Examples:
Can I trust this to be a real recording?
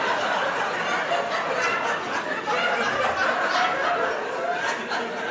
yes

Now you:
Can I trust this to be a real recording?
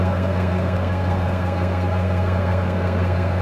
no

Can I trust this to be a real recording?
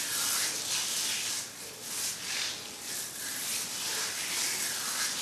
yes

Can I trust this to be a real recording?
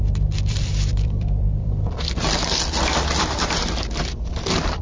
no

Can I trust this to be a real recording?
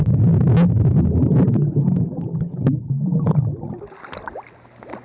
yes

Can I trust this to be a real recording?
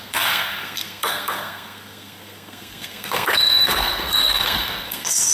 no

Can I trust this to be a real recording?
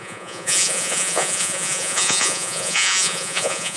no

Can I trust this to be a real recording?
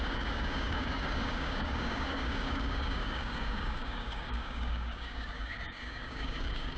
no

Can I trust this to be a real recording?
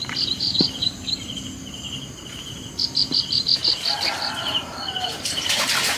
no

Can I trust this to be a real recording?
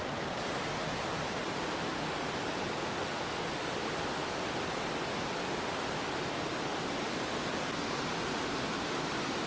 yes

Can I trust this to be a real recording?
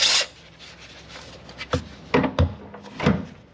yes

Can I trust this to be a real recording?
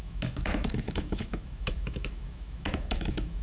no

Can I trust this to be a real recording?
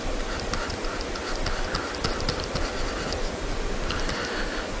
yes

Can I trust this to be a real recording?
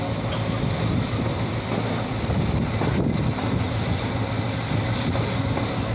yes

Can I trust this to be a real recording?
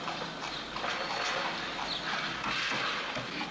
yes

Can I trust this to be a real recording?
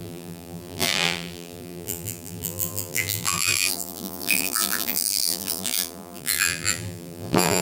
no